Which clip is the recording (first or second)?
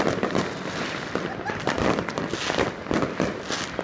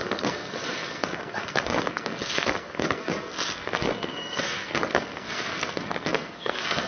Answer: first